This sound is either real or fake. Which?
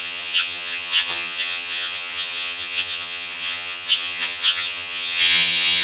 fake